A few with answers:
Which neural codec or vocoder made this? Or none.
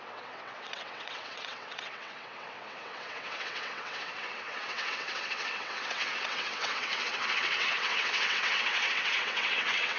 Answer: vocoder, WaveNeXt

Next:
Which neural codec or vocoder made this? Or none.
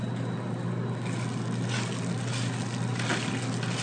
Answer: none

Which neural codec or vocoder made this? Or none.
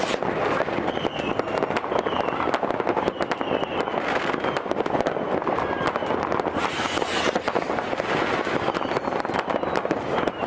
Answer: none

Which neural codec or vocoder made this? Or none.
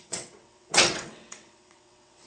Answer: vocoder, WaveNeXt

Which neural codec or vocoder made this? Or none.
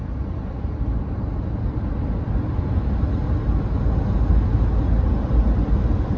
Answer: none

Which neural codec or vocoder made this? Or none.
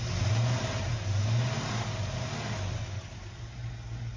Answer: none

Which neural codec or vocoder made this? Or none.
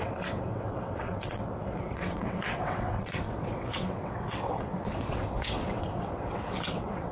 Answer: vocoder, WaveNeXt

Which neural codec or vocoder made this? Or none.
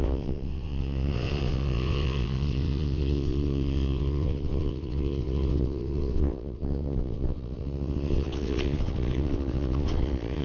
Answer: vocoder, WaveNeXt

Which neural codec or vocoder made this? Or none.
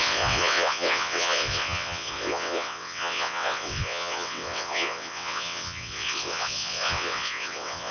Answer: vocoder, WaveNeXt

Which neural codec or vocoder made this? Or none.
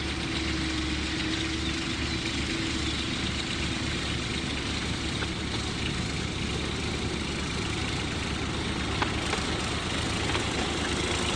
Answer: none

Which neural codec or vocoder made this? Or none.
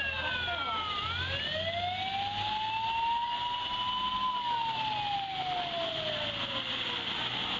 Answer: none